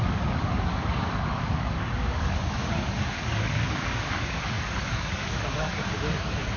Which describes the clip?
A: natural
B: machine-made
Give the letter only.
B